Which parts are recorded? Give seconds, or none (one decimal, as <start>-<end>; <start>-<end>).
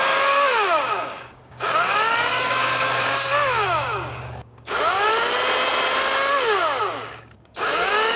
5.1-6.8